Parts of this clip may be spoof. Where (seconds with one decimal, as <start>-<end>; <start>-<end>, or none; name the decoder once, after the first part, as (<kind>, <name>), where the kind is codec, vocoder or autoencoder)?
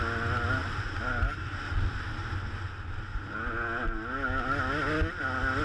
none